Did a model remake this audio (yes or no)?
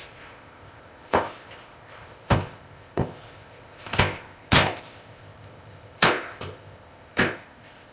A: yes